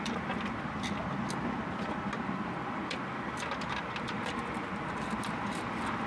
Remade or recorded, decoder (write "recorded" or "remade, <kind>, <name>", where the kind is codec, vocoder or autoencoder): recorded